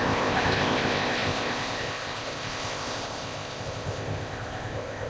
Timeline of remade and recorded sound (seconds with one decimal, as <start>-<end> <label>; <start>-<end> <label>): 0.0-5.1 remade